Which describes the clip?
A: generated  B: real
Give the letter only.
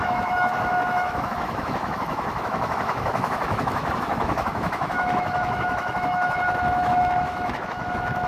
A